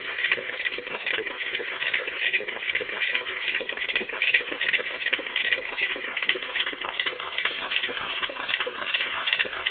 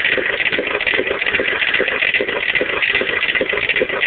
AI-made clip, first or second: first